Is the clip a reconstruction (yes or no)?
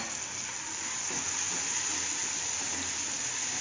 no